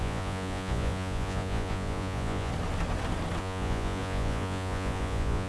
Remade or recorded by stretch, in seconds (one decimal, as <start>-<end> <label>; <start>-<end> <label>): 0.0-2.5 remade; 2.5-3.4 recorded; 3.4-5.5 remade